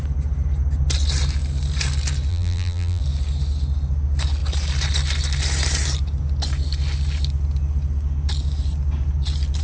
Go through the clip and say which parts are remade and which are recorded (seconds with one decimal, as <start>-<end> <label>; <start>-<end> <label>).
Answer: 0.0-2.3 recorded; 2.3-3.0 remade; 3.0-9.6 recorded